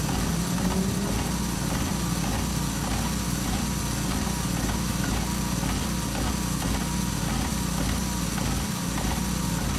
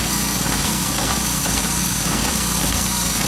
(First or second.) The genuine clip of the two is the first